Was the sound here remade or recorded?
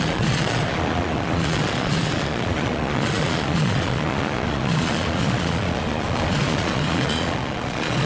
remade